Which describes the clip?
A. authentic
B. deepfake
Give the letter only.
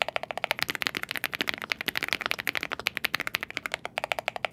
A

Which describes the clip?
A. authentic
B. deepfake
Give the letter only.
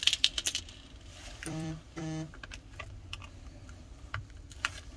B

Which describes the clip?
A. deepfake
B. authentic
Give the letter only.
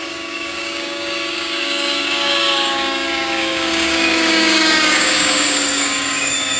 A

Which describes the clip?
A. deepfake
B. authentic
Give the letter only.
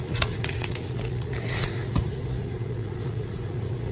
A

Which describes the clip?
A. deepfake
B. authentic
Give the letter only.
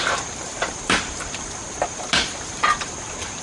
A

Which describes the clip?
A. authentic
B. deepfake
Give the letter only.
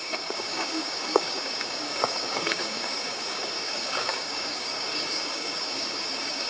B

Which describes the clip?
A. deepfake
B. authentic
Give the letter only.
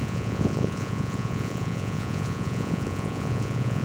A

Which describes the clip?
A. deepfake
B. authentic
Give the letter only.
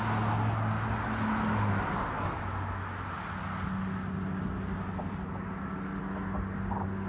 B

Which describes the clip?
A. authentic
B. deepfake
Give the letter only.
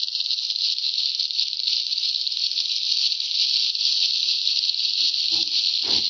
A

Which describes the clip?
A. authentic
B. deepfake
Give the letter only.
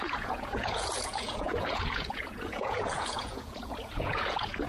B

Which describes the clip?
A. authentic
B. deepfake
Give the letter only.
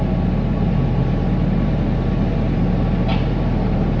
A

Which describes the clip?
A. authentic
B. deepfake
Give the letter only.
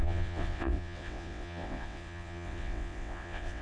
B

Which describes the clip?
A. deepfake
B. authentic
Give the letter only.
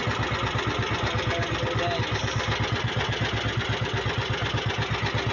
B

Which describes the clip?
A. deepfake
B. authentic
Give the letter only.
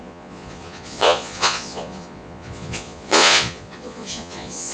A